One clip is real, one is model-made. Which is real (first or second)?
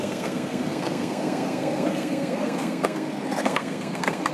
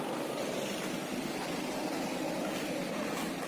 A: second